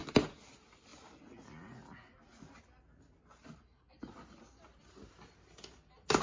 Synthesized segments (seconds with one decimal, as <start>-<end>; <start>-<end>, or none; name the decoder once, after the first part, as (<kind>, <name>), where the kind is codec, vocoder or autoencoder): none